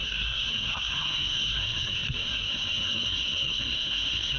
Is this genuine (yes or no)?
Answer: no